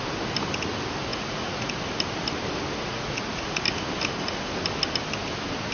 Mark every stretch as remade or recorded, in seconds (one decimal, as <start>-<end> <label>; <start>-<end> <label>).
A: 0.0-1.1 recorded; 1.1-1.7 remade; 1.7-2.8 recorded; 2.8-3.6 remade; 3.6-5.7 recorded